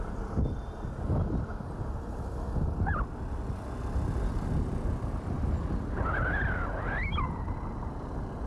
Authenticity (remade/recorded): recorded